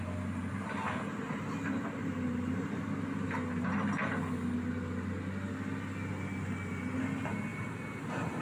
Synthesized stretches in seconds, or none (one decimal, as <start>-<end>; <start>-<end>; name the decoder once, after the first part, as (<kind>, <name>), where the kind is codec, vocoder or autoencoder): none